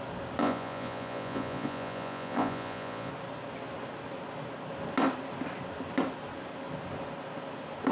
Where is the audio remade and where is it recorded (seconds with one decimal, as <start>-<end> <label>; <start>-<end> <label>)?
0.0-0.4 recorded; 0.4-3.1 remade; 3.1-7.9 recorded

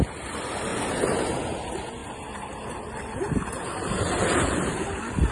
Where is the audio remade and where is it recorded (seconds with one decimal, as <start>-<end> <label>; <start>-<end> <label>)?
0.0-0.7 recorded; 0.7-1.2 remade; 1.2-2.0 recorded; 2.0-5.3 remade

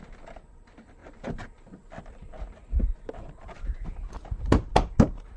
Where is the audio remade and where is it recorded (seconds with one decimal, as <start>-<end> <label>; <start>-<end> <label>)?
0.0-5.4 recorded

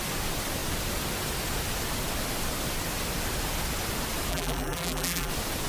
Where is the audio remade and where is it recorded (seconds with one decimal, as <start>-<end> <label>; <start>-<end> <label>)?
0.0-4.3 recorded; 4.3-5.3 remade; 5.3-5.7 recorded

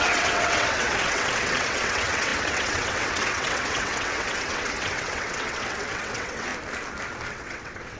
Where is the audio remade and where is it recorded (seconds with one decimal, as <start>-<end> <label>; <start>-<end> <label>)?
0.0-6.5 remade; 6.5-7.3 recorded; 7.3-8.0 remade

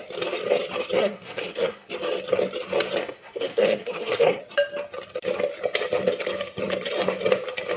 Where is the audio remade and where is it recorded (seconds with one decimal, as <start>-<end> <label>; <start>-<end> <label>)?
0.0-1.0 recorded; 1.0-1.9 remade; 1.9-3.0 recorded; 3.0-4.4 remade; 4.4-7.8 recorded

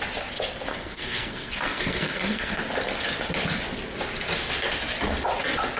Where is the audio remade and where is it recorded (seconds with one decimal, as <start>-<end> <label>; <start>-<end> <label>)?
0.0-0.7 recorded; 0.7-2.6 remade; 2.6-5.8 recorded